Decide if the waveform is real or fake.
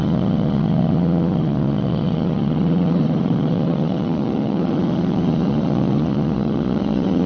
fake